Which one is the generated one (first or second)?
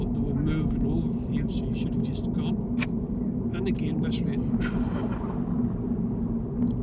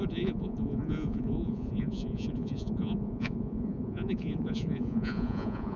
second